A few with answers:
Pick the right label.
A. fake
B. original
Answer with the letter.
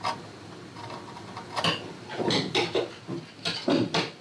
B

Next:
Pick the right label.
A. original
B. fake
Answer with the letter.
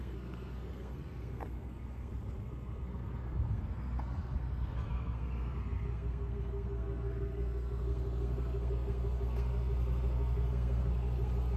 B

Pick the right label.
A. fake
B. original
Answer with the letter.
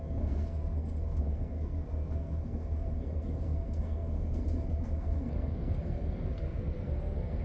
A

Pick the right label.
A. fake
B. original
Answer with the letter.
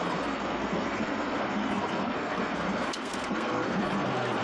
A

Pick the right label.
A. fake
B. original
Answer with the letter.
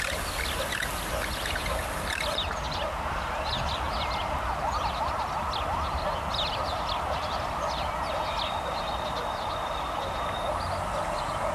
B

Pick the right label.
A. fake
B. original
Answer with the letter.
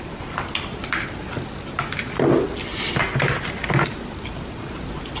B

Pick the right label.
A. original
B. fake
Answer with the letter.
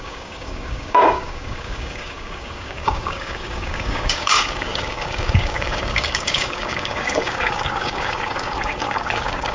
B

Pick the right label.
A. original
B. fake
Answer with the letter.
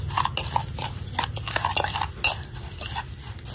A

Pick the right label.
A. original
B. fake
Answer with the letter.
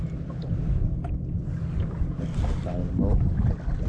A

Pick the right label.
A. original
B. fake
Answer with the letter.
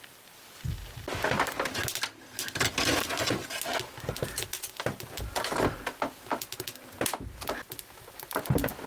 A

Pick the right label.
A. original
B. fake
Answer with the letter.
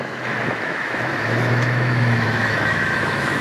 B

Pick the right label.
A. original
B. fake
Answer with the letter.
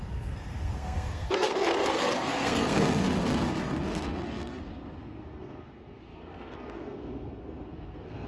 B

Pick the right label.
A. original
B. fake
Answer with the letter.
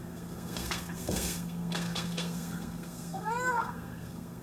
B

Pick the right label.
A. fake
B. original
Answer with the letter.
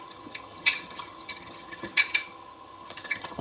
A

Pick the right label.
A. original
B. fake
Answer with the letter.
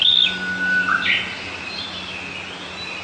A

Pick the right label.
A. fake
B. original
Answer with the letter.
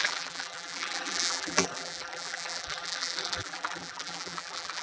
A